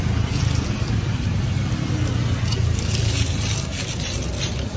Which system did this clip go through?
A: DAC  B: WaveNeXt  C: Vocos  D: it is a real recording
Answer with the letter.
D